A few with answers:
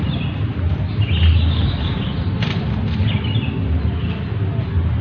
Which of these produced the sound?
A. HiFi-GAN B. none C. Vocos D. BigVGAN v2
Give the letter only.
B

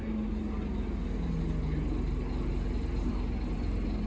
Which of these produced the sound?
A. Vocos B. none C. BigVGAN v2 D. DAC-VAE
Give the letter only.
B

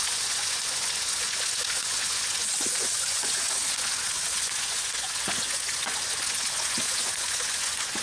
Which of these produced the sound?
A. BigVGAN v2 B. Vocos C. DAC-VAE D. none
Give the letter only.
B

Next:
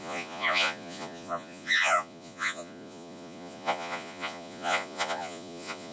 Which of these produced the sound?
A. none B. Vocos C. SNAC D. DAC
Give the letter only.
B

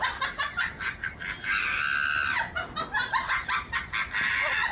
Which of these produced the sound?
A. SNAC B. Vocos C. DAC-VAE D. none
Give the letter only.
D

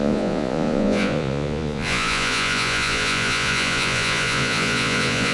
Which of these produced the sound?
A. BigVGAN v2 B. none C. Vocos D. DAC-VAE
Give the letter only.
C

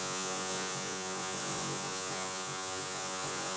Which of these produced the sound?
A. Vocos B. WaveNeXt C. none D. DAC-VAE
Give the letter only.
A